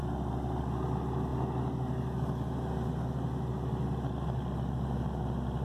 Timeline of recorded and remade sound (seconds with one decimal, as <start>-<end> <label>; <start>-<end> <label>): 0.0-5.6 recorded